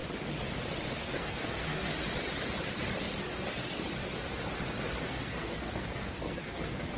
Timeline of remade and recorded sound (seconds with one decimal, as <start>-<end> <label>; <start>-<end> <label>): 0.0-0.9 recorded; 0.9-1.9 remade; 1.9-5.0 recorded; 5.0-7.0 remade

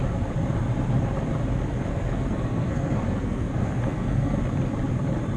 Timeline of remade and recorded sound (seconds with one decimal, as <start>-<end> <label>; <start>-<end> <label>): 0.0-1.9 recorded; 1.9-4.4 remade; 4.4-5.4 recorded

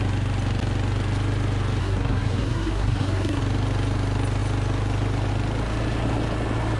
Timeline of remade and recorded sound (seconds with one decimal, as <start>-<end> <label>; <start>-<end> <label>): 0.0-1.8 recorded; 1.8-3.4 remade; 3.4-6.8 recorded

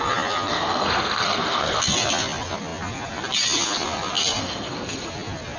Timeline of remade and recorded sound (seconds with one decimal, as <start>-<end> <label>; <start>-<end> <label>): 0.0-0.5 recorded; 0.5-1.8 remade; 1.8-4.4 recorded; 4.4-5.1 remade; 5.1-5.6 recorded

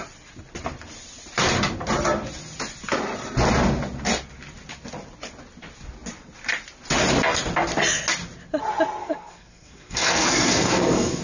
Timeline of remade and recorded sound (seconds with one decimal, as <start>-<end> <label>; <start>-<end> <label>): 0.0-9.0 recorded; 9.0-11.2 remade

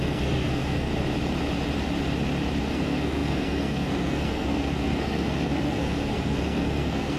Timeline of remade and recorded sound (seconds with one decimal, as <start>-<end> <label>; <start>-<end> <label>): 0.0-0.9 remade; 0.9-2.6 recorded; 2.6-7.2 remade

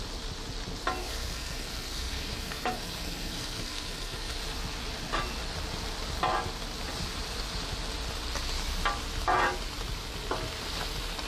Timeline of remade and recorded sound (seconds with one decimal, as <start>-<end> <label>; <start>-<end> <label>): 0.0-1.0 recorded; 1.0-4.4 remade; 4.4-11.3 recorded